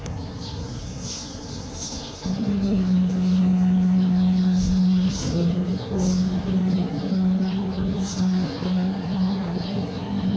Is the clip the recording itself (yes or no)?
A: no